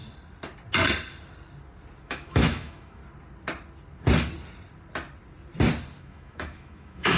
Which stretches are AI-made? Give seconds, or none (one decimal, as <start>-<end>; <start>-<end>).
2.0-3.0; 6.0-7.2